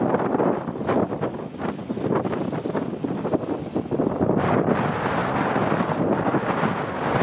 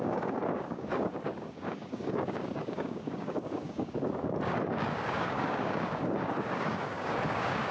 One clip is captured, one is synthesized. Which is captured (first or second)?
first